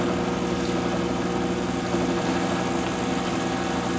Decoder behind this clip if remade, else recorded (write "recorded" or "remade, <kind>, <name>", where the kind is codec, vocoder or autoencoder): recorded